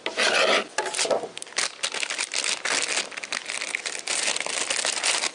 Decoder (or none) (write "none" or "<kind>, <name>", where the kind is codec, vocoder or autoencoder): none